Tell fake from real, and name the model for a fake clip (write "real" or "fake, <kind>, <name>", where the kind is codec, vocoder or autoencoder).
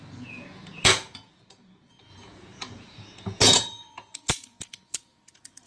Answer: fake, vocoder, Vocos